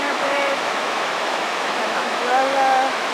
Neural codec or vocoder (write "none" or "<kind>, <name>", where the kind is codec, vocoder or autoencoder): autoencoder, DAC-VAE